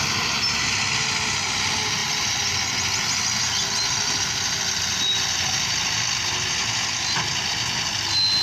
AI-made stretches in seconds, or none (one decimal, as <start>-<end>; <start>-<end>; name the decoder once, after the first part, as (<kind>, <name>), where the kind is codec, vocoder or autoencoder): none